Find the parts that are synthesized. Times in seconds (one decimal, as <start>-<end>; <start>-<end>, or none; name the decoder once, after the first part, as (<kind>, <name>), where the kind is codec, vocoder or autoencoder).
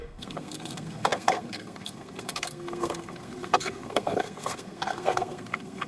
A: 0.0-5.9 (codec, SNAC)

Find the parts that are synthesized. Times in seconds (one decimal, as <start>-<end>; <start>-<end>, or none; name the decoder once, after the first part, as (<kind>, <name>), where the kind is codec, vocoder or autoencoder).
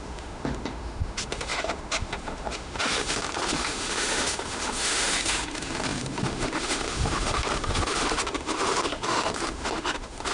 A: 0.0-10.3 (autoencoder, DAC-VAE)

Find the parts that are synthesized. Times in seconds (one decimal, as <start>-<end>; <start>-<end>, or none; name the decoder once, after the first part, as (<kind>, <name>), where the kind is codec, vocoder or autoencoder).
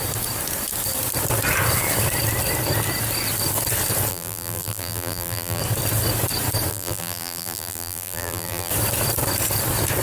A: 4.1-5.6 (vocoder, BigVGAN v2); 6.7-8.7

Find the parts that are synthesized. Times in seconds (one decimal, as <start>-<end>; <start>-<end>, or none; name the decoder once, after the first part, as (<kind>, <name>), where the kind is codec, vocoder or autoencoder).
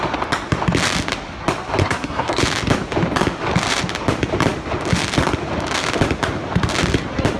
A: 1.8-2.4 (codec, SNAC)